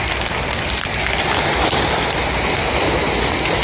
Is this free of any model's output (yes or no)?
yes